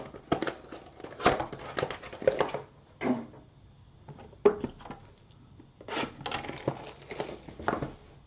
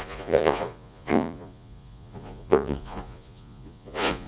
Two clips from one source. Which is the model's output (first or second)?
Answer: second